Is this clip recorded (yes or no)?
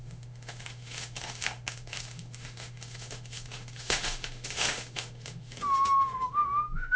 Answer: no